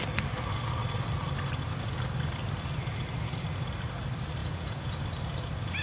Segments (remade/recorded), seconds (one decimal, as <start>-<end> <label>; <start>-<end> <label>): 0.0-4.4 recorded; 4.4-5.0 remade; 5.0-5.8 recorded